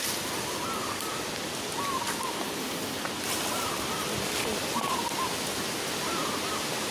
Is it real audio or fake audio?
real